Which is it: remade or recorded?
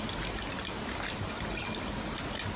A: recorded